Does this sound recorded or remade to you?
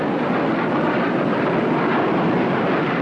recorded